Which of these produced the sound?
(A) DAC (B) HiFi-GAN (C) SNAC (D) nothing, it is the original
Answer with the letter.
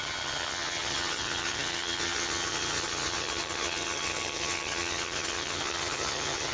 B